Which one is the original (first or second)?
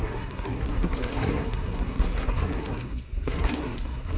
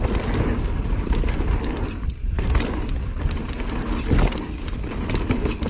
second